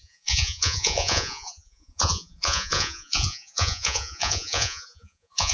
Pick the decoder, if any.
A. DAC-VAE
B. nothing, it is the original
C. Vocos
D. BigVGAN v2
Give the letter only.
C